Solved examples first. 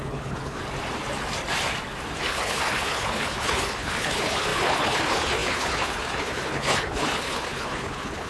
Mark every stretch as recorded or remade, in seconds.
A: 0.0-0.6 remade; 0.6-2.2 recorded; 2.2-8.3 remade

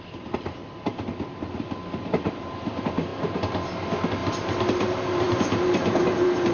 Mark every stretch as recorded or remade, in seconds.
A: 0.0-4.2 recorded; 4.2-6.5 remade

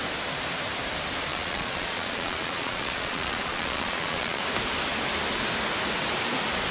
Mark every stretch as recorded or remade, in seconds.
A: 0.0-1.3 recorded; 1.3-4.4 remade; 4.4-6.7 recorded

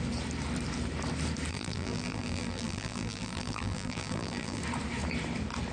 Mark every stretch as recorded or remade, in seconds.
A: 0.0-1.5 recorded; 1.5-4.6 remade; 4.6-5.7 recorded

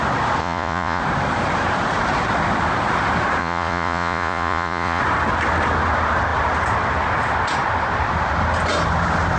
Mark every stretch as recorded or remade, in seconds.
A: 0.0-0.4 recorded; 0.4-1.0 remade; 1.0-3.4 recorded; 3.4-5.0 remade; 5.0-9.4 recorded

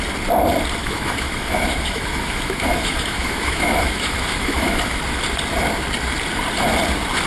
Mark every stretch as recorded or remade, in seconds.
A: 0.0-0.8 recorded; 0.8-5.0 remade; 5.0-7.3 recorded